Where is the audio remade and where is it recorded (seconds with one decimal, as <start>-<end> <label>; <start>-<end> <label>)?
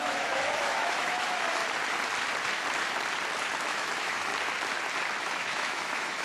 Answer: 0.0-1.6 remade; 1.6-3.6 recorded; 3.6-4.3 remade; 4.3-5.2 recorded; 5.2-6.2 remade